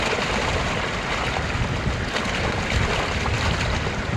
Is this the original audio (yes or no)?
yes